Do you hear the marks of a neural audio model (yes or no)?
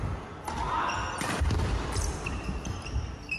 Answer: no